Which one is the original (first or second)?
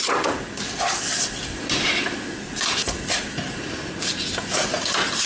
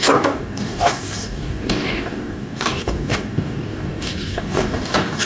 first